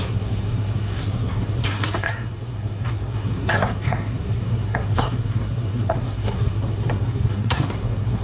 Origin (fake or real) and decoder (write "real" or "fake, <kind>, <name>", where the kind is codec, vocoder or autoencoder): fake, codec, SNAC